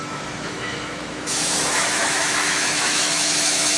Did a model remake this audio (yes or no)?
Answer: yes